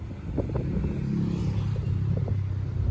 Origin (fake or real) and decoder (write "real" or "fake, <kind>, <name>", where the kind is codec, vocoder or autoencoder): real